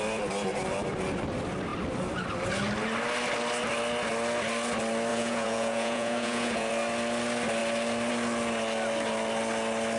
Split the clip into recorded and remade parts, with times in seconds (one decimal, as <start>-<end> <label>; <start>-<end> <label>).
0.0-5.1 recorded; 5.1-6.7 remade; 6.7-10.0 recorded